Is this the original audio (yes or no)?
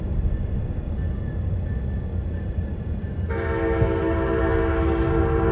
yes